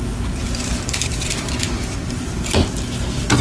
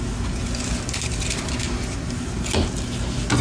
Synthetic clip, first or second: first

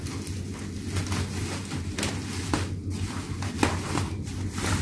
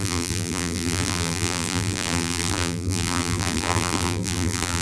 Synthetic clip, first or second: second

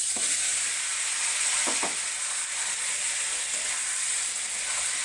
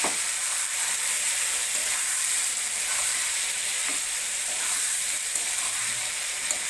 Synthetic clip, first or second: second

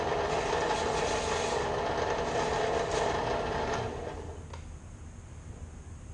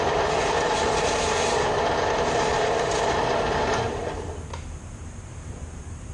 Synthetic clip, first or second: second